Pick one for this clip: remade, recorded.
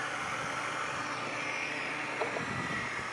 recorded